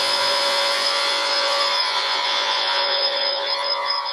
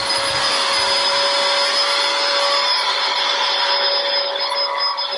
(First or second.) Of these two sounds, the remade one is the first